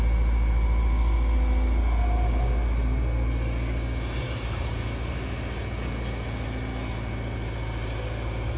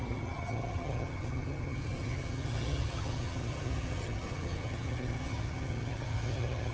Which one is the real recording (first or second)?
first